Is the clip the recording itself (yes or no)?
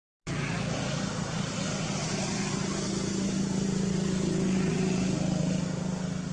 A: yes